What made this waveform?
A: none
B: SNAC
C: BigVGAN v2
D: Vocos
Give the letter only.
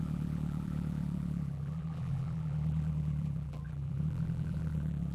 C